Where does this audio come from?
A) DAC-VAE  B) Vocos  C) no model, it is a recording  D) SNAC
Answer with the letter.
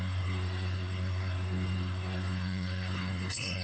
D